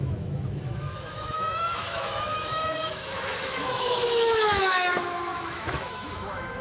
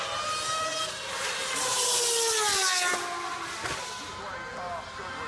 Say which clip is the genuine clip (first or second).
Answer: second